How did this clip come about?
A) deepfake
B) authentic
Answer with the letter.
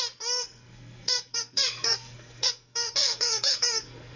A